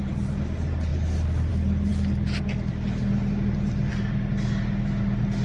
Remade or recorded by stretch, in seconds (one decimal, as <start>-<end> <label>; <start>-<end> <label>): 0.0-5.4 recorded